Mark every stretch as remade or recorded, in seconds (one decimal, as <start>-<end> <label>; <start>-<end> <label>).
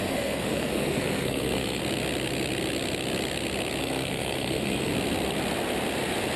0.0-1.8 remade; 1.8-3.8 recorded; 3.8-4.9 remade; 4.9-6.4 recorded